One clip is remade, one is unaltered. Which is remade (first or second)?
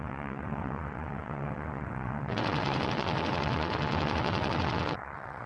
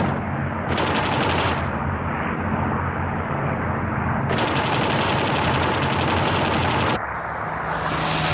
first